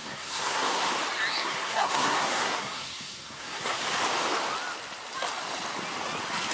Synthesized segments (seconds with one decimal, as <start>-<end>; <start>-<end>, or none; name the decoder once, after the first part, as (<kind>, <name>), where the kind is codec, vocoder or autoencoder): 0.0-0.9 (codec, SNAC); 1.3-3.8

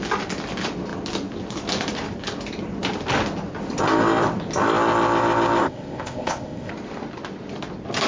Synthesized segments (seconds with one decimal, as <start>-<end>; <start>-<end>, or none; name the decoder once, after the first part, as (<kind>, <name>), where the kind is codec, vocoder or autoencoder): 5.6-6.7 (codec, ZipCodec)

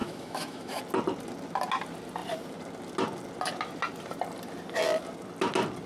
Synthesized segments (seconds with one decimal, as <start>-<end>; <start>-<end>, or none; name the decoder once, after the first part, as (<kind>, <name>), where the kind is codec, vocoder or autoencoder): 0.0-0.8 (autoencoder, DAC-VAE)